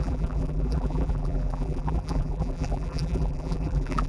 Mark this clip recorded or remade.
remade